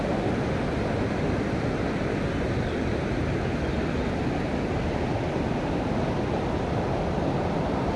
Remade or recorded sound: recorded